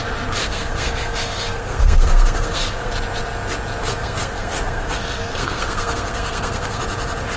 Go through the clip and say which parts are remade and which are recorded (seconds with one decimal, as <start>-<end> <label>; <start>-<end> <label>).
0.0-0.4 recorded; 0.4-2.9 remade; 2.9-3.8 recorded; 3.8-6.8 remade; 6.8-7.4 recorded